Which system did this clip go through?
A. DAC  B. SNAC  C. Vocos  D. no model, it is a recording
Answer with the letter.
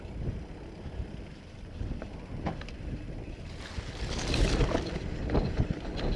D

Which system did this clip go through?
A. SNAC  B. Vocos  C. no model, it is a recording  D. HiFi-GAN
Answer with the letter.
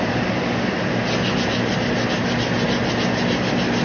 C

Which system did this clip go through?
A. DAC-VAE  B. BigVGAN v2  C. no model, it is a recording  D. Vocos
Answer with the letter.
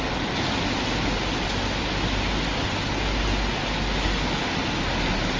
C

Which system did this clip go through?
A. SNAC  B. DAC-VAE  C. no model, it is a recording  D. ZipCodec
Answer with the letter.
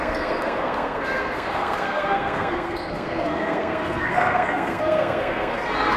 A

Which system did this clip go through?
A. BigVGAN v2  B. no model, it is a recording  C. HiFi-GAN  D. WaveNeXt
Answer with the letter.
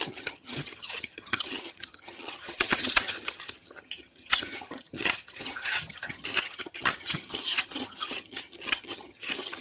C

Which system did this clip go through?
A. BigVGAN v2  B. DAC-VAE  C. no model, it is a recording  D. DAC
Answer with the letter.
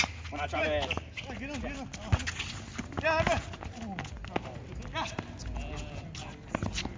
C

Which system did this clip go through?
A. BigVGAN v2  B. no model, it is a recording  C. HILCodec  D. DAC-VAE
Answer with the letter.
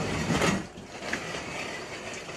A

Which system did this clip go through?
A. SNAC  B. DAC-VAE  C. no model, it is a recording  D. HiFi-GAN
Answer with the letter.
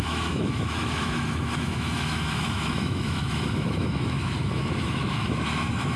B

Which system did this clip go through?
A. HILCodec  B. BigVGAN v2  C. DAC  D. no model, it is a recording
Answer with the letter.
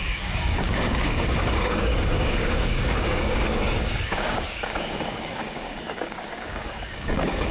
C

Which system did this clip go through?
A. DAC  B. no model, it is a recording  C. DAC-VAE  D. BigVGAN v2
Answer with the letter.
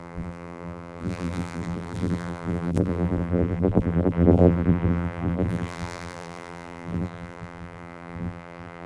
D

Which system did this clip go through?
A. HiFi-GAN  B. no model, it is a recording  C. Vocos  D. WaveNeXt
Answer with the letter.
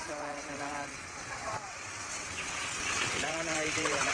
D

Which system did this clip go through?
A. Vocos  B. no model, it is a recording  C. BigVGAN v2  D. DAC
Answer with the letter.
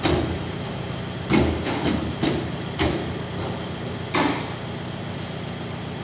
C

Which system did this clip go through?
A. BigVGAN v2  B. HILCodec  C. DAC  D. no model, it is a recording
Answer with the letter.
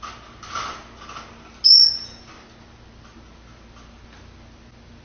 D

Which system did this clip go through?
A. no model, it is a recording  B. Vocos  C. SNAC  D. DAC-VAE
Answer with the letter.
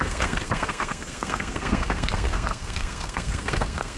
C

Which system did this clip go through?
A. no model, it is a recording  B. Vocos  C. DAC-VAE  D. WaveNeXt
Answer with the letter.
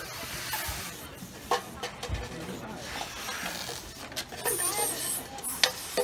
A